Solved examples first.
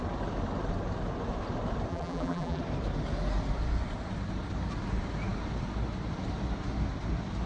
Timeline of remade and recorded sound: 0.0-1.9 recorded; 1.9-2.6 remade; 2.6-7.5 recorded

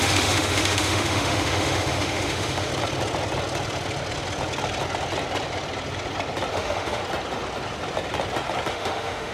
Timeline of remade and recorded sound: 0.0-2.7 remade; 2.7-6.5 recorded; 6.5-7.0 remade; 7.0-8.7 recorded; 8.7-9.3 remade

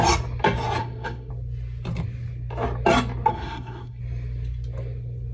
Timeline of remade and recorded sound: 0.0-0.8 recorded; 0.8-1.3 remade; 1.3-3.3 recorded; 3.3-4.0 remade; 4.0-5.3 recorded